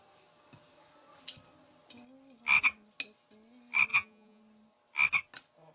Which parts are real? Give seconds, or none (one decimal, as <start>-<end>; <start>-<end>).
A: 0.0-3.9; 4.4-5.7